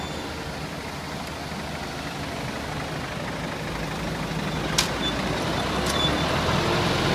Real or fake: real